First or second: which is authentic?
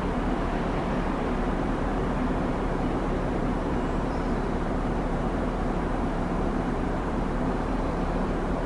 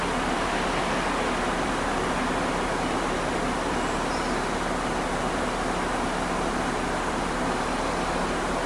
second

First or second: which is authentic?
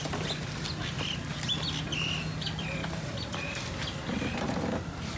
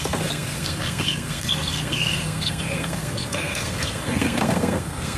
first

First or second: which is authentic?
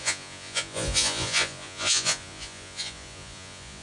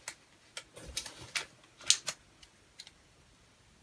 second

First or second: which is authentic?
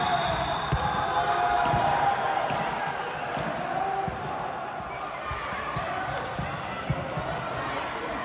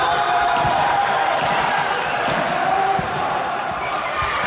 first